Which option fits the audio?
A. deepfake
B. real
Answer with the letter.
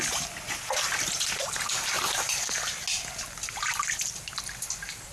B